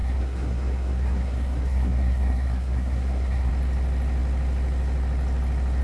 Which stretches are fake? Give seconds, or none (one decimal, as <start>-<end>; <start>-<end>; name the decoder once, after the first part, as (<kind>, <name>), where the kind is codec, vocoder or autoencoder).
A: 0.0-3.5 (codec, SNAC)